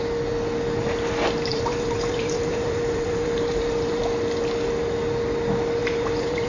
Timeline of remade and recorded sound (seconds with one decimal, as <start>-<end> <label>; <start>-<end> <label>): 0.0-1.5 recorded; 1.5-4.0 remade; 4.0-5.8 recorded; 5.8-6.5 remade